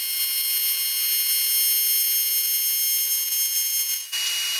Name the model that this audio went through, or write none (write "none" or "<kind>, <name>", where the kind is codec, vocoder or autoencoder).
none